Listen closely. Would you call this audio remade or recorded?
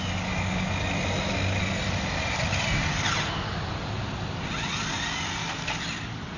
recorded